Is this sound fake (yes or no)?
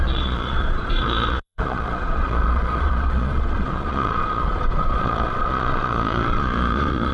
yes